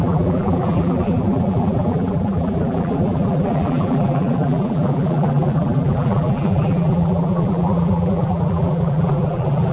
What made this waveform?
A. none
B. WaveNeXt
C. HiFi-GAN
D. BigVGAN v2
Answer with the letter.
D